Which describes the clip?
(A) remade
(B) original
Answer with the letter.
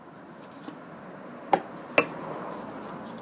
B